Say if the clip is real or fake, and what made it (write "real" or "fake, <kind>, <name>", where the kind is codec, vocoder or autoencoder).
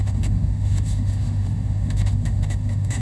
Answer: fake, autoencoder, DAC-VAE